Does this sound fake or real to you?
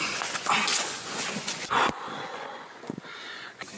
fake